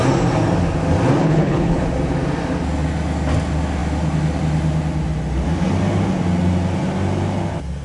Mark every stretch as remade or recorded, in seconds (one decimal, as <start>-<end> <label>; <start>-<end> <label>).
0.0-1.2 recorded; 1.2-1.8 remade; 1.8-7.8 recorded